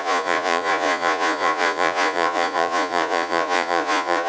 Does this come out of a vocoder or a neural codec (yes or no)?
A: yes